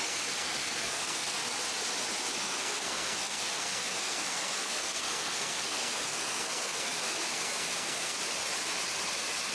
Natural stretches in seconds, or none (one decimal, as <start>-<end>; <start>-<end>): 1.4-2.4; 8.2-9.5

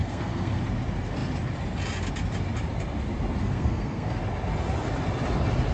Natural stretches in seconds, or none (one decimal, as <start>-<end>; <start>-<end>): 0.6-3.4; 4.2-5.7